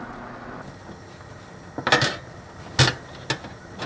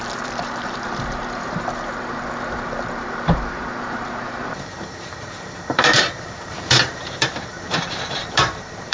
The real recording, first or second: first